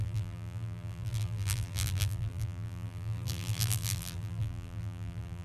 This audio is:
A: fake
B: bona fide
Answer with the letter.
A